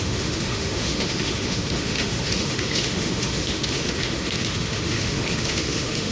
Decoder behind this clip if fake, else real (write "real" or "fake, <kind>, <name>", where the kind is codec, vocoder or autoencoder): fake, autoencoder, DAC-VAE